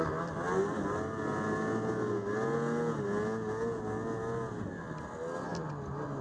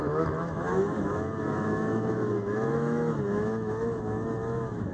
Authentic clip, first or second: first